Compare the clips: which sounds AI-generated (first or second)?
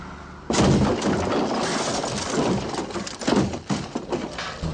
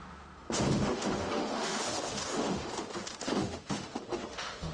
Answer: second